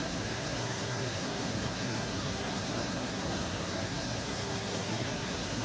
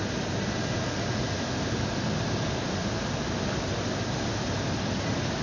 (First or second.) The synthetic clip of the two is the first